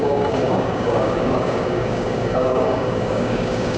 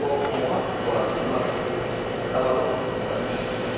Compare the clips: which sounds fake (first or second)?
first